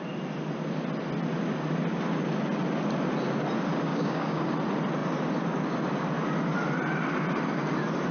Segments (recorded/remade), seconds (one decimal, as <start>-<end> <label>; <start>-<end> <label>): 0.0-3.9 recorded; 3.9-4.5 remade; 4.5-8.1 recorded